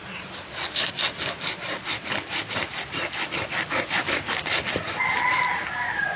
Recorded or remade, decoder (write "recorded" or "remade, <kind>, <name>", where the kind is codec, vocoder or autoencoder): recorded